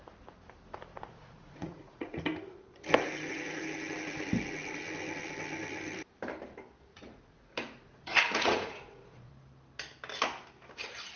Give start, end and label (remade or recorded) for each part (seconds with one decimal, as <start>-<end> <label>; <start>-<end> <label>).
0.0-0.9 recorded; 0.9-2.2 remade; 2.2-6.9 recorded; 6.9-9.3 remade; 9.3-11.2 recorded